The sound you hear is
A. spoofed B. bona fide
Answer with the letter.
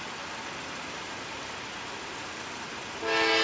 B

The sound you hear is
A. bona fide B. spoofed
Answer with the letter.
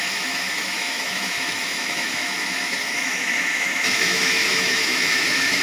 B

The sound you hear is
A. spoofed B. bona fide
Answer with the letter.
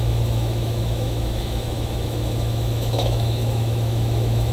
A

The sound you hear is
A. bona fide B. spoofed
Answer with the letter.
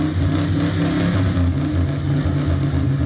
A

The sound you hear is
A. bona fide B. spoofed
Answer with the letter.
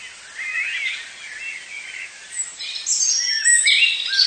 A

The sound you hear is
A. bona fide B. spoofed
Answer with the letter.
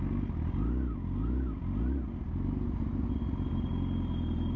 A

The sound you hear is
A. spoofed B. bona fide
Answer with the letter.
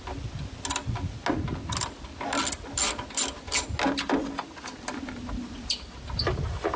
B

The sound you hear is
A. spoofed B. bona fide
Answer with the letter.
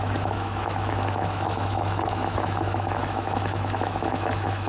A